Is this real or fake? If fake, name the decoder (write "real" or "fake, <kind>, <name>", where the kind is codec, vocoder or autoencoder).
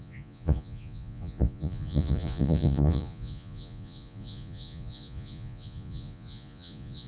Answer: fake, vocoder, Vocos